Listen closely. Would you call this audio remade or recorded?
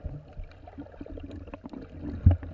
recorded